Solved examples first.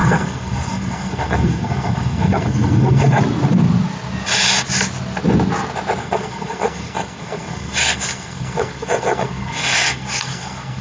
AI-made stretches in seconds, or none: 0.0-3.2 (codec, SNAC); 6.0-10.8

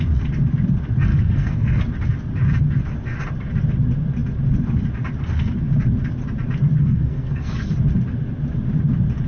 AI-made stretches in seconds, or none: 1.1-1.8 (codec, SNAC); 6.8-7.5

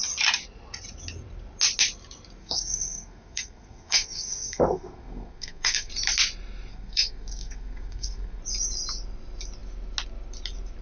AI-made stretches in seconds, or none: 2.4-5.9 (codec, SNAC); 6.7-8.4

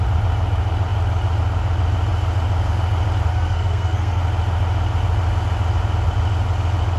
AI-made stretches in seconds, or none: 3.3-4.2 (codec, SNAC)